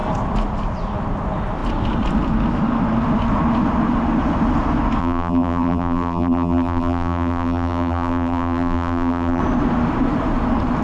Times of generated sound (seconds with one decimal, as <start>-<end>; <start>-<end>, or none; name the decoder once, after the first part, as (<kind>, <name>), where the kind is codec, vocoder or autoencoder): 5.0-9.4 (vocoder, BigVGAN v2)